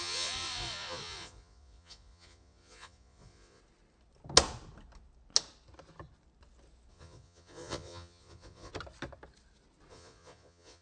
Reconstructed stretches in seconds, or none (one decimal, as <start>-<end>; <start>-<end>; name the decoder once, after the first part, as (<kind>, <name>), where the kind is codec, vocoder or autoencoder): 0.0-3.6 (vocoder, Vocos); 6.9-8.7; 9.9-10.8